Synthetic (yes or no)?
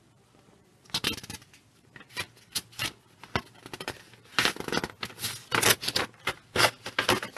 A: no